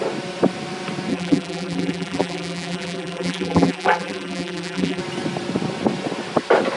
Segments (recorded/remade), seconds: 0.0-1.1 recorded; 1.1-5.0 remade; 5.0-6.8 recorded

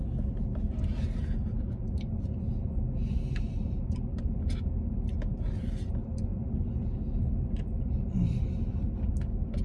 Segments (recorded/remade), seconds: 0.0-9.6 recorded

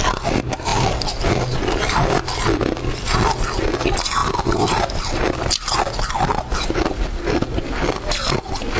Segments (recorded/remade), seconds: 0.0-8.8 recorded

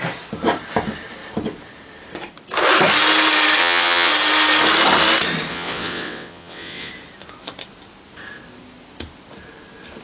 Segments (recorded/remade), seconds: 0.0-3.6 recorded; 3.6-4.1 remade; 4.1-5.5 recorded; 5.5-6.9 remade; 6.9-10.0 recorded

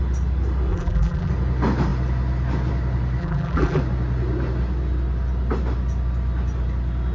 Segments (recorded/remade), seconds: 0.0-0.7 recorded; 0.7-1.3 remade; 1.3-3.2 recorded; 3.2-3.8 remade; 3.8-7.1 recorded

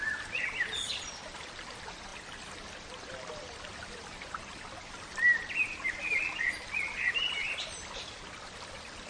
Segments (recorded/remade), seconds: 0.0-9.1 recorded